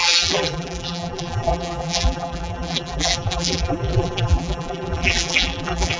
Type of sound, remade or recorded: remade